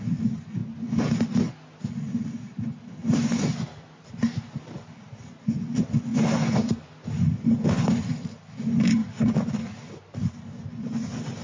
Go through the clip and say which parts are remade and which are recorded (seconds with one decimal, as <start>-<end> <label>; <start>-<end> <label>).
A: 0.0-0.6 remade; 0.6-2.3 recorded; 2.3-6.1 remade; 6.1-7.9 recorded; 7.9-11.4 remade